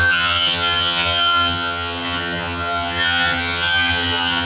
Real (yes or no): no